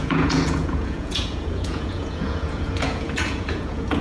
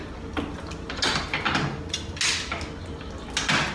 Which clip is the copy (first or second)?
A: first